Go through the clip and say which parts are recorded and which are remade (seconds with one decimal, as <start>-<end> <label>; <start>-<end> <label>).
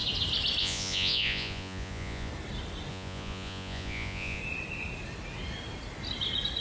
0.0-0.6 recorded; 0.6-2.3 remade; 2.3-2.9 recorded; 2.9-4.4 remade; 4.4-6.6 recorded